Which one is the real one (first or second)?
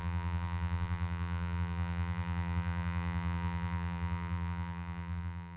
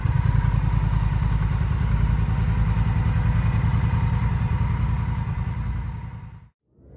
second